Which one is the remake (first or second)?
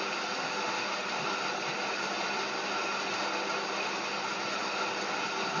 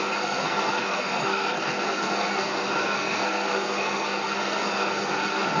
second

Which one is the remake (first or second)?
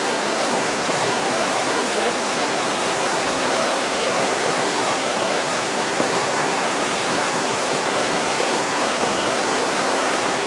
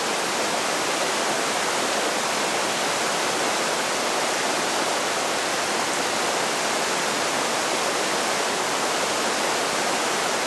first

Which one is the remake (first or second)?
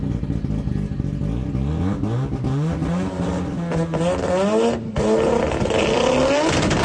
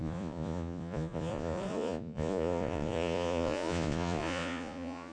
second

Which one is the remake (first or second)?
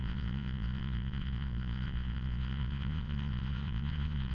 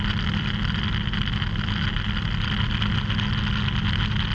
first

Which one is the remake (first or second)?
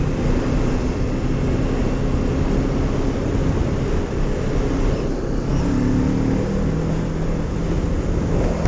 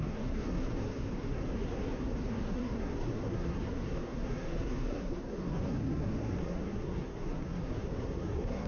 second